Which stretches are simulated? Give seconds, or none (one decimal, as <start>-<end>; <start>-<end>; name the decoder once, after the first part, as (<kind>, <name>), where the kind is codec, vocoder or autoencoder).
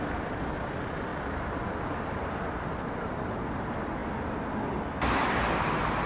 none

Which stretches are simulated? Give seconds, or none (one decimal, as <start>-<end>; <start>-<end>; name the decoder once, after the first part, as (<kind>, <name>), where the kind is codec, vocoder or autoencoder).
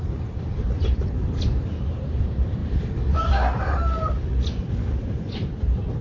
none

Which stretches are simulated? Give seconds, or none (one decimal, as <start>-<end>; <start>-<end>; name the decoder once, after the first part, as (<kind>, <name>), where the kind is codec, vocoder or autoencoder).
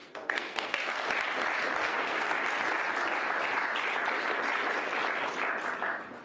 0.0-1.0 (codec, SNAC); 1.8-2.3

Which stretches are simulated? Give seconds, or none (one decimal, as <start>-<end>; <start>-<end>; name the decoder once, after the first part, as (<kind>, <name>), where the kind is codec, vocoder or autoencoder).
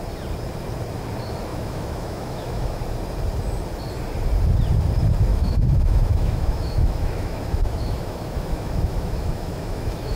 1.5-2.8 (autoencoder, DAC-VAE); 5.3-10.2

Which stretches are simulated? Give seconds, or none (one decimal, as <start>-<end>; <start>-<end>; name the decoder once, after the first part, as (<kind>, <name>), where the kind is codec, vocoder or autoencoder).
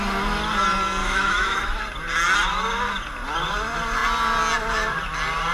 1.0-1.8 (autoencoder, DAC-VAE)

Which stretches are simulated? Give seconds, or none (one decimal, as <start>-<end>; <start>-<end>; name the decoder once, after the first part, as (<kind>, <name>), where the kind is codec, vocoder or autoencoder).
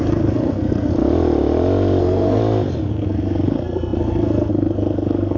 0.0-0.9 (codec, SNAC); 2.0-2.4; 2.9-5.4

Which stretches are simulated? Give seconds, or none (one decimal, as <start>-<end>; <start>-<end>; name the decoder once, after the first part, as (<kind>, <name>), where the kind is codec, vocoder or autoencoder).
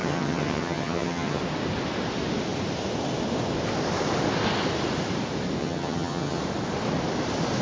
0.0-1.4 (vocoder, HiFi-GAN); 5.6-6.4